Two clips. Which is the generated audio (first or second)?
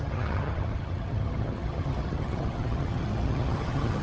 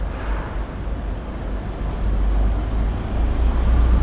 first